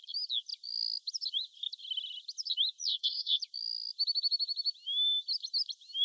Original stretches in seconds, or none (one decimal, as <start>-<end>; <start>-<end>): 0.0-2.9; 3.4-6.0